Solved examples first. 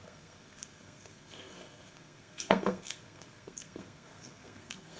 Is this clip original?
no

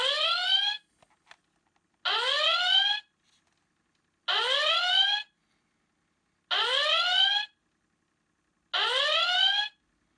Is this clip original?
yes